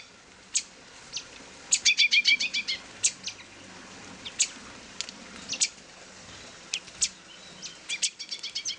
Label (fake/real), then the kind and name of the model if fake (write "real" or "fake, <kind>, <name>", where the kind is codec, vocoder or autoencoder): real